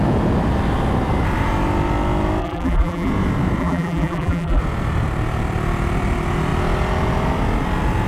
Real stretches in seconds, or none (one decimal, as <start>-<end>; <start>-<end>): 0.0-2.4; 3.1-3.6; 4.6-8.1